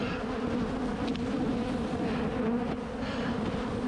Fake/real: real